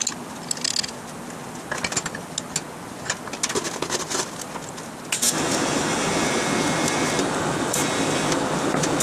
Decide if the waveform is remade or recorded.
recorded